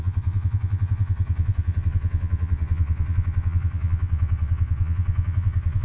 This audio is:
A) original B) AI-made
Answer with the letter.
B